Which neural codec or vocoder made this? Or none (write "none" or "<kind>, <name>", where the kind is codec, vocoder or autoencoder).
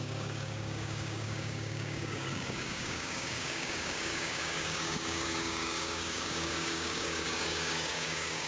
codec, DAC